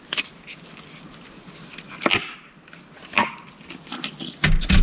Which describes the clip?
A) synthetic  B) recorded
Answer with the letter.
B